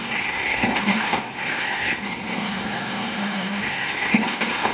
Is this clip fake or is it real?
fake